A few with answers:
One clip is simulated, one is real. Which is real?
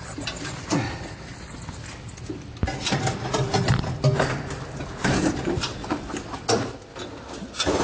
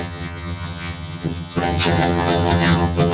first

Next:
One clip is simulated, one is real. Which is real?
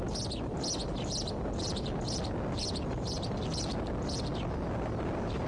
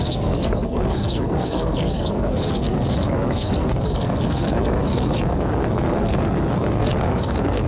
first